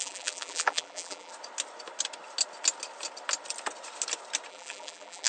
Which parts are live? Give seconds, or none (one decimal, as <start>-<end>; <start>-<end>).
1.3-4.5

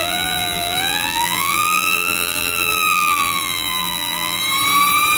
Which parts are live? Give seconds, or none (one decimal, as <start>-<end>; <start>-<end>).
4.4-5.2

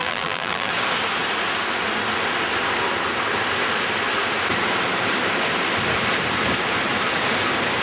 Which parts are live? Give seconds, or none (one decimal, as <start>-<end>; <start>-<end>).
0.7-7.8

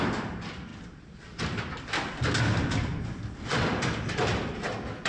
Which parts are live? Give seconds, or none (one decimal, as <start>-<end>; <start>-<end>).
0.0-5.1

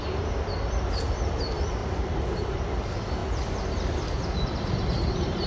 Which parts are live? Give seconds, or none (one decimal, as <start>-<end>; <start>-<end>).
0.0-1.8; 2.3-5.5